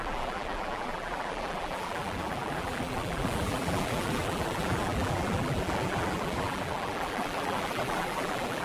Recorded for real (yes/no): no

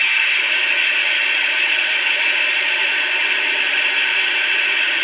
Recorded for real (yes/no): yes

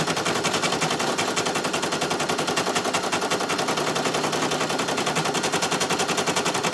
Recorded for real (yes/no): yes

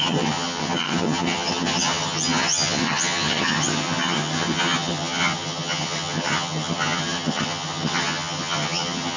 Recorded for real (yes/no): no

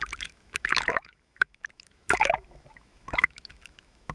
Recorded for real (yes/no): no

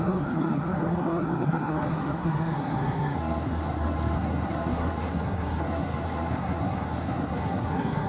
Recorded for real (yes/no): no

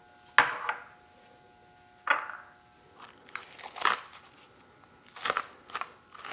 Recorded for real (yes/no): yes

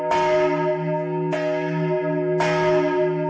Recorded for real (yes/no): yes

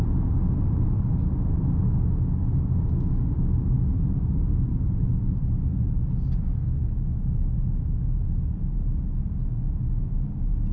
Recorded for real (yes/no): yes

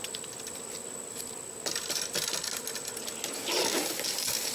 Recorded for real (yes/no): yes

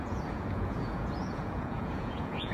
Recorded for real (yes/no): no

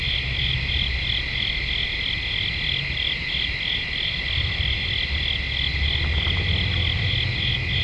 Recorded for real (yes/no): yes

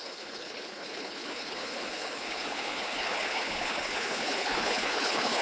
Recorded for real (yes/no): no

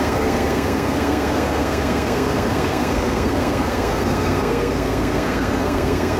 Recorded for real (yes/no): no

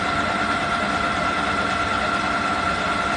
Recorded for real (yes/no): yes